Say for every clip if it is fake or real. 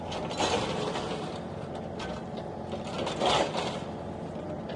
real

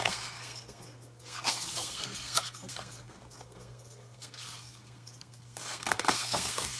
fake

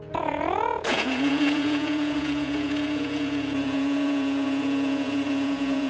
fake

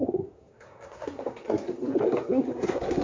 fake